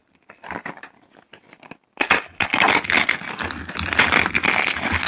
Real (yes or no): yes